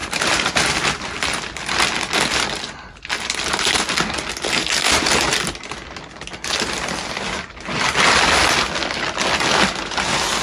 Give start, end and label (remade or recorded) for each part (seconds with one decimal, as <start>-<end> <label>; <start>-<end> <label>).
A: 0.0-0.5 remade; 0.5-10.4 recorded